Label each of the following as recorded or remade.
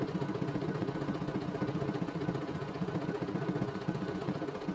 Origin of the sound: remade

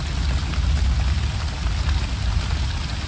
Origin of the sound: recorded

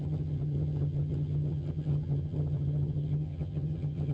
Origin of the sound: remade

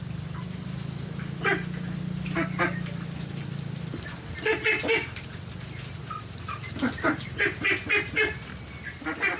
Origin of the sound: recorded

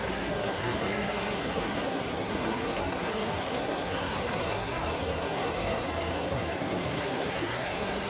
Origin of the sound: remade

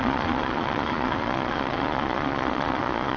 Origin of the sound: remade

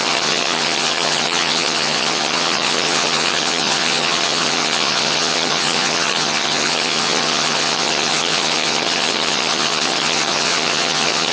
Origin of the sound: remade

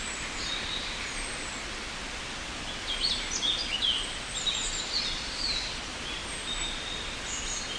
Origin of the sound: recorded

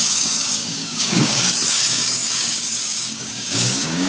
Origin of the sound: remade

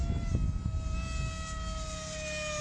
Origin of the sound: recorded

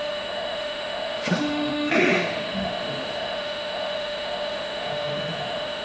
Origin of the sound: remade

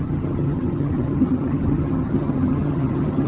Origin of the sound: remade